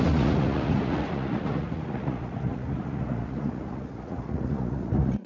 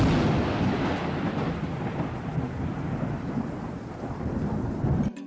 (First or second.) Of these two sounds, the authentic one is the second